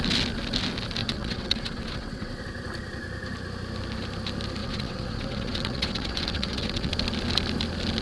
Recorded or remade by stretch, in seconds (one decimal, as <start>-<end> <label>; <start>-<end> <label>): 0.0-1.0 recorded; 1.0-2.4 remade; 2.4-4.6 recorded; 4.6-6.9 remade; 6.9-8.0 recorded